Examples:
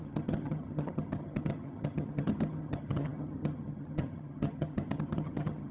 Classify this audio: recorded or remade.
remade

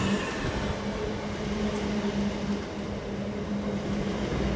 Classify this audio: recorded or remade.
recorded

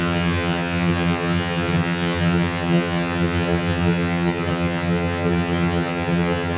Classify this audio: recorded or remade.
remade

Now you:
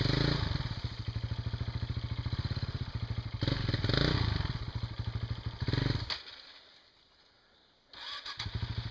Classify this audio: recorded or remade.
recorded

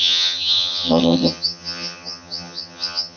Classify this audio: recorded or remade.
remade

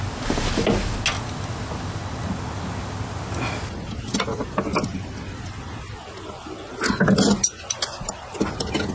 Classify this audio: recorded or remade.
recorded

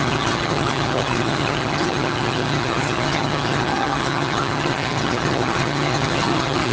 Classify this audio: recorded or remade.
remade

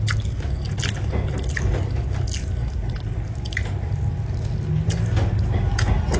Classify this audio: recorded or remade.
recorded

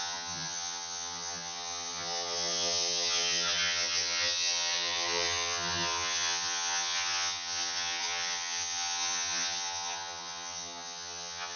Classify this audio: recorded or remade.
remade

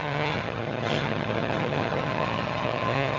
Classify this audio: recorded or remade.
remade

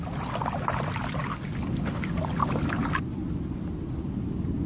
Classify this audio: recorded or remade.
recorded